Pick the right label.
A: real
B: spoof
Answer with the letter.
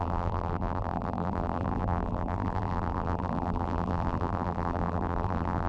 B